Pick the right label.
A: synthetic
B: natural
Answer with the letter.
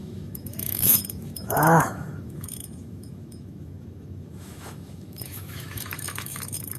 A